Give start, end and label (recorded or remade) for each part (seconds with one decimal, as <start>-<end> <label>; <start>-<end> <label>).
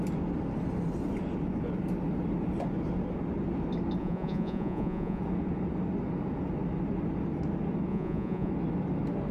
0.0-4.0 recorded; 4.0-5.2 remade; 5.2-7.9 recorded; 7.9-8.5 remade; 8.5-9.3 recorded